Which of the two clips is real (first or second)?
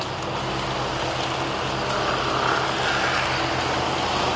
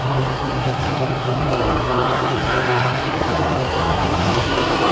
first